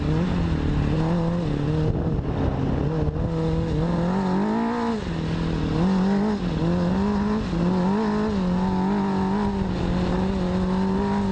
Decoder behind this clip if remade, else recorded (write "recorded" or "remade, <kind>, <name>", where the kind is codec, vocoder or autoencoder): recorded